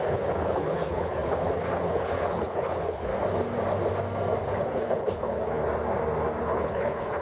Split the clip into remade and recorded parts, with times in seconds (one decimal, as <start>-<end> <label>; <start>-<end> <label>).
0.0-3.1 remade; 3.1-4.6 recorded; 4.6-5.6 remade; 5.6-6.4 recorded; 6.4-7.2 remade